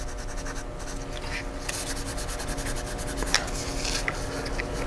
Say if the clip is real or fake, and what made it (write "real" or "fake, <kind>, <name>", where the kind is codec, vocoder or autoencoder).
real